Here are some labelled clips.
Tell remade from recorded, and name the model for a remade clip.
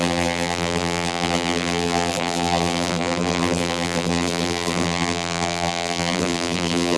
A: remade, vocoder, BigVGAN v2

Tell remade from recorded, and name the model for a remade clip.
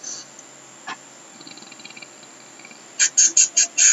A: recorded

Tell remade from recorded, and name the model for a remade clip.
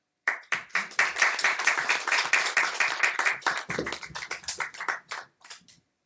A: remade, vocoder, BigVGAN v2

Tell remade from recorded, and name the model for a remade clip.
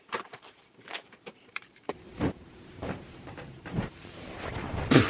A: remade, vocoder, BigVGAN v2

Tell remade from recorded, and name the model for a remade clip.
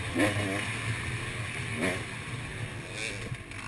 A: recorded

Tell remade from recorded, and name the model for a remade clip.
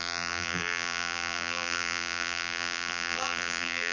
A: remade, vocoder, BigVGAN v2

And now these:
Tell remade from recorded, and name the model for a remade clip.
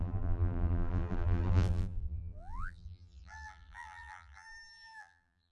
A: remade, vocoder, BigVGAN v2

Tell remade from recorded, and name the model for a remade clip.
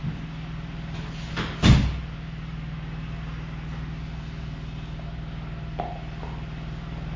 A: recorded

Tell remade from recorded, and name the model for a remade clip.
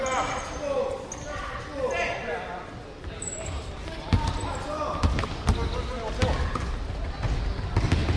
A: recorded